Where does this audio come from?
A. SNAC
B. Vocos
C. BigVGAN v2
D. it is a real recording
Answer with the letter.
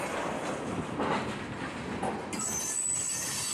D